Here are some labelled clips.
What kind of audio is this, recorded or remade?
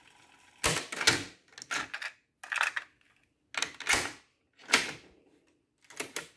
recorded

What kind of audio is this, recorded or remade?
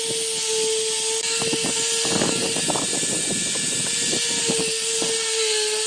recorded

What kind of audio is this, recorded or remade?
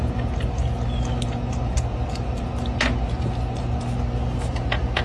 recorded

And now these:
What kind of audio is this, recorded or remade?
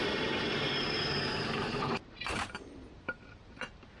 remade